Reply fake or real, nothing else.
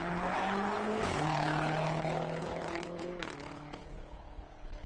fake